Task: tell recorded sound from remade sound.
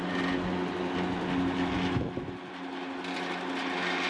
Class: recorded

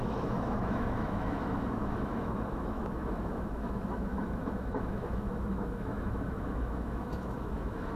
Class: remade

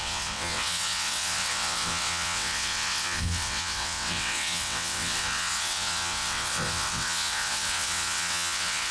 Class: remade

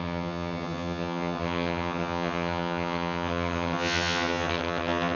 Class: remade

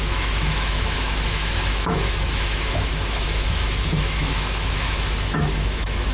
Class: remade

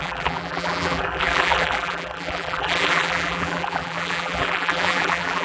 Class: remade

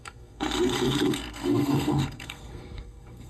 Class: remade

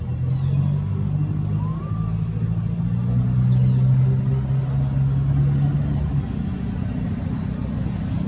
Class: recorded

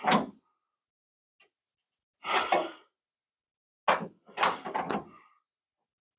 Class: recorded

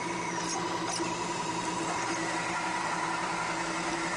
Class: remade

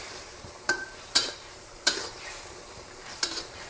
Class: remade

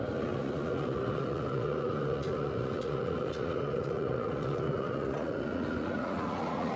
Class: remade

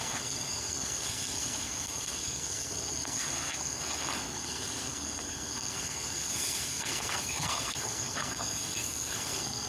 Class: remade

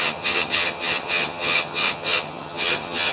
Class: remade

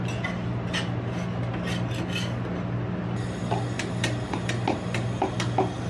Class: recorded